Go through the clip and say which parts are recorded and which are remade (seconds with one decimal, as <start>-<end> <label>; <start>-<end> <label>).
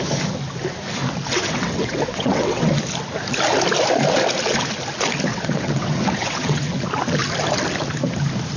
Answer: 0.0-1.3 recorded; 1.3-2.8 remade; 2.8-5.3 recorded; 5.3-6.7 remade; 6.7-8.6 recorded